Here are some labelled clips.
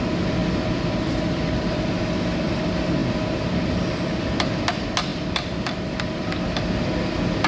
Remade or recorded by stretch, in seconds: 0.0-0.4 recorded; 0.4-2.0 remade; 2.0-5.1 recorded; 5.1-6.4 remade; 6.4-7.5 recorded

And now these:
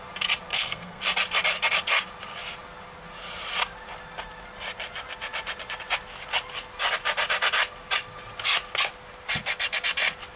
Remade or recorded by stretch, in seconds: 0.0-0.5 recorded; 0.5-1.0 remade; 1.0-10.4 recorded

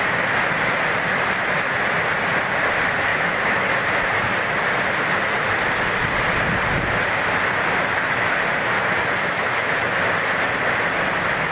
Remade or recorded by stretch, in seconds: 0.0-3.1 recorded; 3.1-3.7 remade; 3.7-9.2 recorded; 9.2-9.7 remade; 9.7-11.5 recorded